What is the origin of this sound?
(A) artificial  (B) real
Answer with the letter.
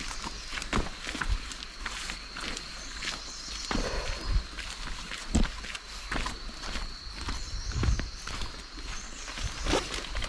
B